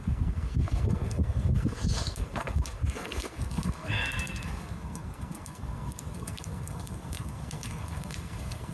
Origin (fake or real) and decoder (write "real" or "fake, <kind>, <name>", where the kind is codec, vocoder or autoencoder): fake, codec, SNAC